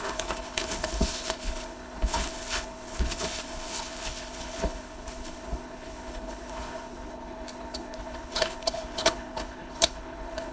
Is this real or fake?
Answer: fake